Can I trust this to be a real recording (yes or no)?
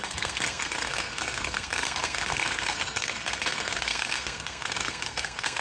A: no